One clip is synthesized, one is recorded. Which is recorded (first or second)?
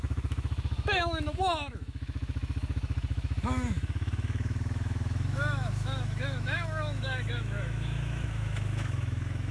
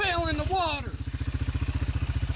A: second